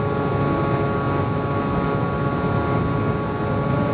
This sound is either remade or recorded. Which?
recorded